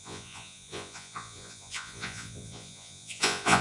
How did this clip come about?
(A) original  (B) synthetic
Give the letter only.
B